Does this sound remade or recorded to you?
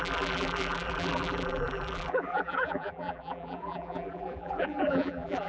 remade